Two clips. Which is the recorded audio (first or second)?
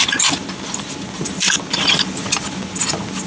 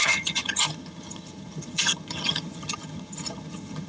first